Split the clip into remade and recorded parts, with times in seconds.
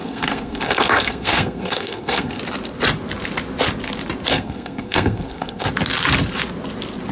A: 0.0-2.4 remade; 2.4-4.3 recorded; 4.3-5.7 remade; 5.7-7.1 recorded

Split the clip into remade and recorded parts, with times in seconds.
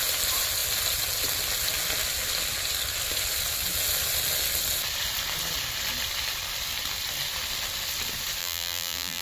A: 0.0-8.4 recorded; 8.4-9.2 remade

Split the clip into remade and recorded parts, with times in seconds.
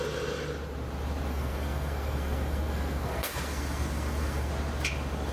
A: 0.0-1.3 recorded; 1.3-4.5 remade; 4.5-5.3 recorded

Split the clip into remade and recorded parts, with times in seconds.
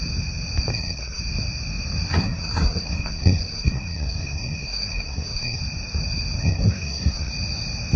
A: 0.0-0.7 recorded; 0.7-1.2 remade; 1.2-2.2 recorded; 2.2-5.6 remade; 5.6-6.4 recorded; 6.4-7.3 remade; 7.3-8.0 recorded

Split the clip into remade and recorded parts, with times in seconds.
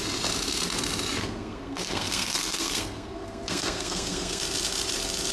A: 0.0-1.2 recorded; 1.2-4.4 remade; 4.4-5.3 recorded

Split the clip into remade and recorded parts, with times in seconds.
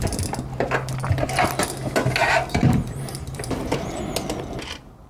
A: 0.0-2.2 recorded; 2.2-3.9 remade; 3.9-5.1 recorded